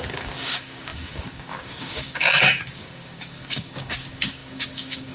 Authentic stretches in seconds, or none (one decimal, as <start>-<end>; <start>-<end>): none